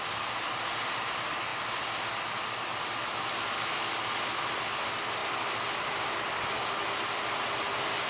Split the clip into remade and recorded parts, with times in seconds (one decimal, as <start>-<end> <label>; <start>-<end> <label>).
0.0-8.1 recorded